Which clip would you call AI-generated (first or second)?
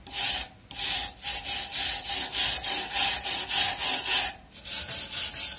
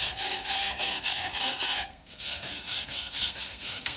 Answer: second